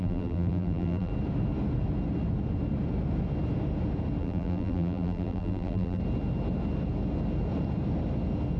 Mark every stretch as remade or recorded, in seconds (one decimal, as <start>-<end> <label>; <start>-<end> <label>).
0.0-1.1 remade; 1.1-4.2 recorded; 4.2-6.0 remade; 6.0-8.6 recorded